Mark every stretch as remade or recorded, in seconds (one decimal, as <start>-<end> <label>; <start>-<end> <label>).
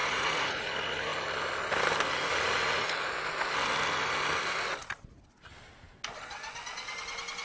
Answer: 0.0-0.6 remade; 0.6-7.4 recorded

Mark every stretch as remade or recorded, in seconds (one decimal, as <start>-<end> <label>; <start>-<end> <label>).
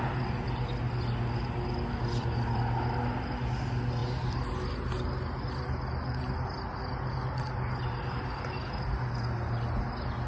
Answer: 0.0-10.3 recorded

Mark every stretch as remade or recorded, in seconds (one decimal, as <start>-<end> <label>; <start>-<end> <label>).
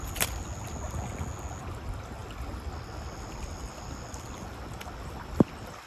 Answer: 0.0-5.9 recorded